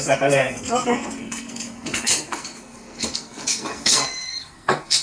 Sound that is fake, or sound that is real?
fake